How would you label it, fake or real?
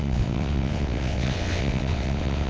fake